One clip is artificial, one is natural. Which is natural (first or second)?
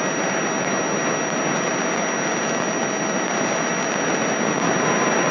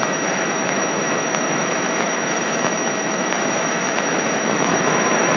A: first